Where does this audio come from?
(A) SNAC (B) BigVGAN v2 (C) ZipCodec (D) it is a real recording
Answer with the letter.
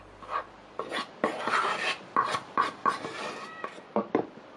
B